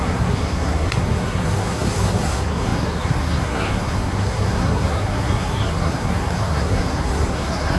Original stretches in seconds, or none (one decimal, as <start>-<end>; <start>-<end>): none